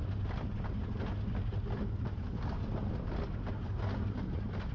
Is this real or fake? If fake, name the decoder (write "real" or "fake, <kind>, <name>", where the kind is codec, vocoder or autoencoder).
real